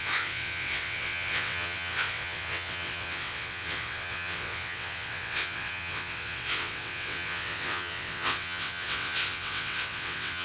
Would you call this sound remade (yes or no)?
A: yes